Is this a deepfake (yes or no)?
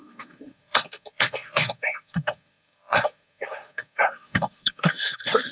yes